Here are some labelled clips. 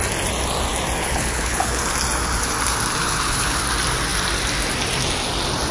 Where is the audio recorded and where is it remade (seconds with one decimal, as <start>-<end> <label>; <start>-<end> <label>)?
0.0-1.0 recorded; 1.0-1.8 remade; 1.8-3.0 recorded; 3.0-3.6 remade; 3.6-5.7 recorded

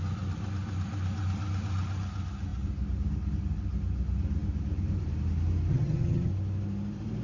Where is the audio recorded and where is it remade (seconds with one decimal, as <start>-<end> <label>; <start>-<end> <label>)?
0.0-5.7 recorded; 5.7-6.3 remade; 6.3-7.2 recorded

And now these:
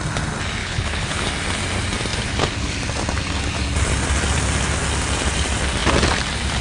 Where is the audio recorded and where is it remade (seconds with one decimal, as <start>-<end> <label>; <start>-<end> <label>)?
0.0-0.6 recorded; 0.6-1.2 remade; 1.2-6.6 recorded